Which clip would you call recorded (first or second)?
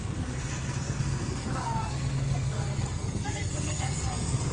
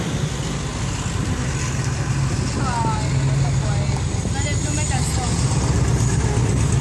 second